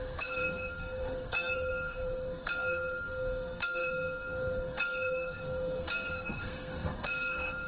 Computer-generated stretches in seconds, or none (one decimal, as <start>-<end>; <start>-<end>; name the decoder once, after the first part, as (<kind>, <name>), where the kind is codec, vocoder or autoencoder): 0.0-7.7 (codec, SNAC)